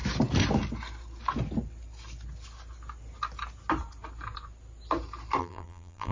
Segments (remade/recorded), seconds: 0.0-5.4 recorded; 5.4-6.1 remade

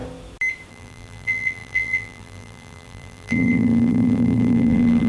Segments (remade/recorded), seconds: 0.0-0.7 recorded; 0.7-5.1 remade

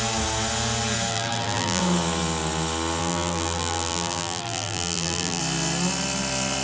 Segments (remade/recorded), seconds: 0.0-1.1 recorded; 1.1-1.8 remade; 1.8-3.0 recorded; 3.0-5.4 remade; 5.4-6.6 recorded

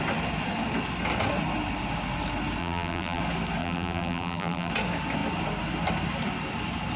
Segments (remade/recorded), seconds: 0.0-2.6 recorded; 2.6-3.2 remade; 3.2-3.6 recorded; 3.6-4.7 remade; 4.7-7.0 recorded

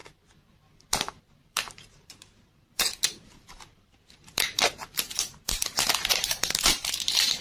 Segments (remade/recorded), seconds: 0.0-1.2 recorded; 1.2-7.4 remade